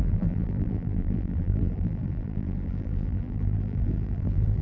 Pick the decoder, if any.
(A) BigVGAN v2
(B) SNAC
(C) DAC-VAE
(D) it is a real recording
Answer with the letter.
A